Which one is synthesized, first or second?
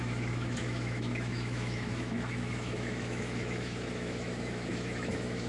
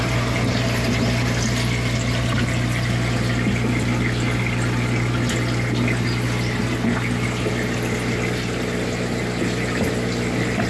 first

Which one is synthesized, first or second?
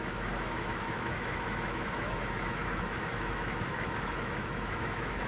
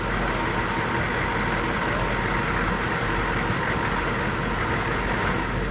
first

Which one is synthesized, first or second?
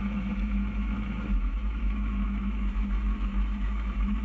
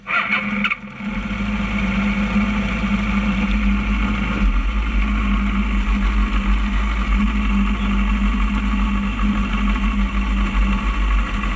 first